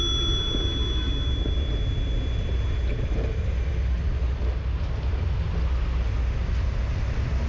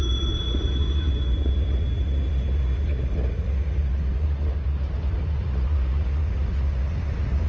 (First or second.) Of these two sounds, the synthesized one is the second